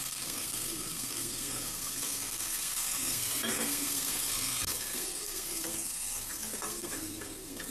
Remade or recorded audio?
remade